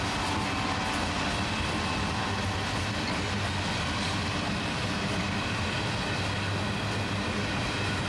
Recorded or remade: recorded